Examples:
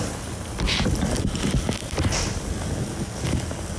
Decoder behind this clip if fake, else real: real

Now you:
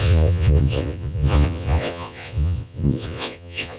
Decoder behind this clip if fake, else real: fake, vocoder, Vocos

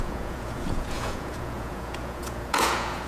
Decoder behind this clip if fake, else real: fake, vocoder, Vocos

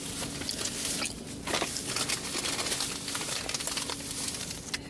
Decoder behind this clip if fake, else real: real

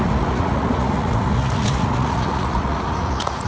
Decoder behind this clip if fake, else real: fake, vocoder, Vocos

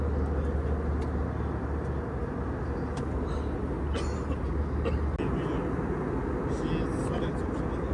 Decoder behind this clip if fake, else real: real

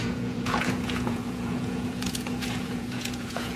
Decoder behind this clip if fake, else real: fake, vocoder, Vocos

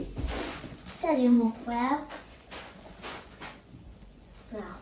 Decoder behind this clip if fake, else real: fake, vocoder, Vocos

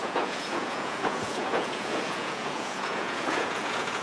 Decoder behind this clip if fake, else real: fake, vocoder, Vocos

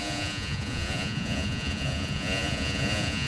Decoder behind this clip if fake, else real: fake, vocoder, Vocos